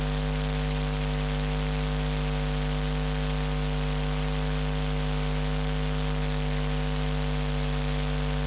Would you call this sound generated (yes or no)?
no